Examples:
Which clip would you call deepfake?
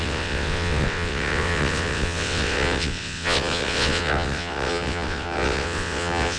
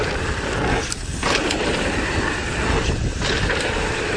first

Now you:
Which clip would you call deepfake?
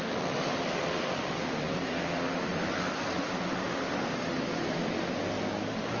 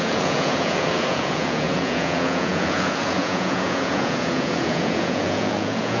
second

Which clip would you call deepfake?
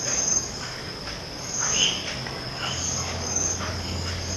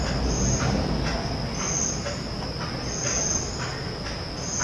first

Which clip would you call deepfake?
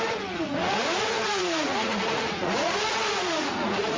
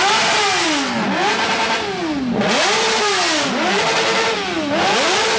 first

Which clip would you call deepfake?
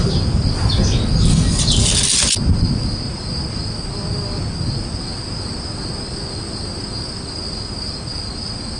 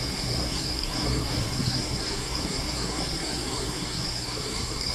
second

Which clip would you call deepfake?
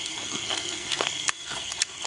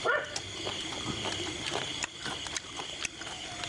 first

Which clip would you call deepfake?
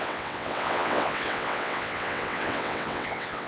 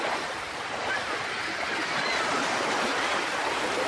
first